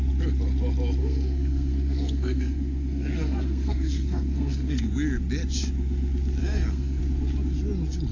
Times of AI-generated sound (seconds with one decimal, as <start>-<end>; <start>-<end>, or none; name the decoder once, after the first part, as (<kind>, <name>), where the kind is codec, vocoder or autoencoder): 1.0-4.8 (codec, SNAC); 6.4-7.0